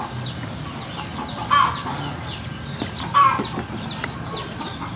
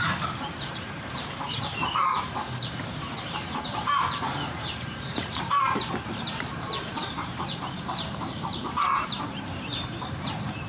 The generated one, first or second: second